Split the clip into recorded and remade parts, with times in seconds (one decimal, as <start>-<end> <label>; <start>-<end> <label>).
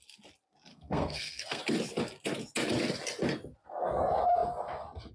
0.0-0.7 recorded; 0.7-1.6 remade; 1.6-5.1 recorded